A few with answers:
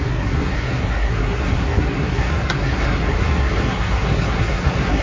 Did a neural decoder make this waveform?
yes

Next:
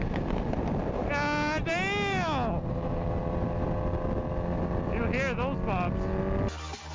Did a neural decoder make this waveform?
no